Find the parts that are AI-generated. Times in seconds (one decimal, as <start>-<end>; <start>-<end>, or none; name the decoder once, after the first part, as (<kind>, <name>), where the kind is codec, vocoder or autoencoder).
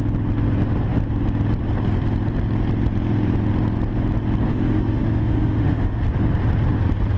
4.5-6.0 (autoencoder, DAC-VAE)